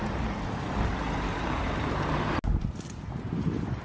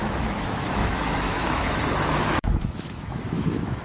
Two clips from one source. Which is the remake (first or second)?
second